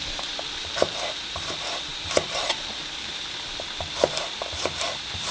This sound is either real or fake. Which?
fake